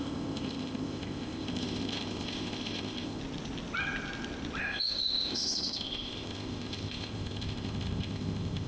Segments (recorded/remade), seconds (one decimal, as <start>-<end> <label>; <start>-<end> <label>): 0.0-3.2 remade; 3.2-4.6 recorded; 4.6-8.7 remade